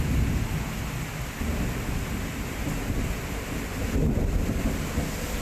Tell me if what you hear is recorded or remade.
recorded